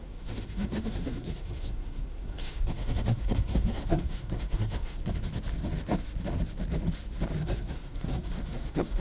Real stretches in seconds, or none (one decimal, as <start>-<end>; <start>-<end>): 5.0-7.4